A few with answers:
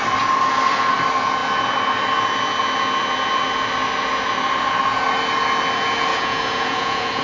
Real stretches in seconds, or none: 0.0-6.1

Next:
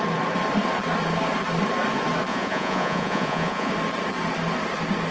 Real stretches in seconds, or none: 0.0-2.3; 3.7-5.1

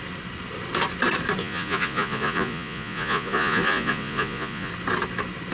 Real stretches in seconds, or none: 0.0-1.4; 4.7-5.5